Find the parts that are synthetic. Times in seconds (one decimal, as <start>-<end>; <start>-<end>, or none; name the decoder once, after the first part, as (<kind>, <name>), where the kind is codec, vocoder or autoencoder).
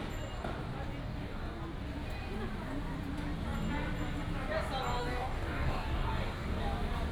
1.0-1.6 (codec, DAC); 5.0-6.6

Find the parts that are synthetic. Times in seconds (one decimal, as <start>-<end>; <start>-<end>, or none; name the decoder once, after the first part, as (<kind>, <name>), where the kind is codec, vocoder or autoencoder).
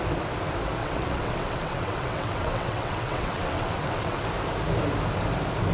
0.8-4.2 (vocoder, WaveNeXt)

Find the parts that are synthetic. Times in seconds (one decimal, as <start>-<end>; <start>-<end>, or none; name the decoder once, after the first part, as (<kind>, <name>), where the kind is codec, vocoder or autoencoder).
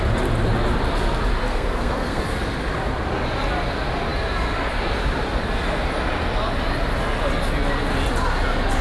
1.5-2.2 (codec, SNAC)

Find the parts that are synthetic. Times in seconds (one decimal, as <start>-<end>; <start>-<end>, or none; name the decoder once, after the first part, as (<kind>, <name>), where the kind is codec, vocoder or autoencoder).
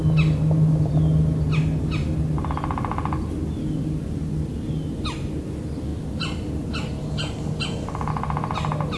none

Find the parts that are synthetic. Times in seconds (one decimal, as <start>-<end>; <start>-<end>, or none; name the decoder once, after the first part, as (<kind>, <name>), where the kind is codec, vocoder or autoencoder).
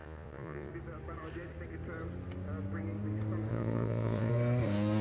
0.0-0.7 (vocoder, Vocos); 3.5-4.3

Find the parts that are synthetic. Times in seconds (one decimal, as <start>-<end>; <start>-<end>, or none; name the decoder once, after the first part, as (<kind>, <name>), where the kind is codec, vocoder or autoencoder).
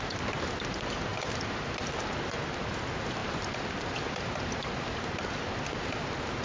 none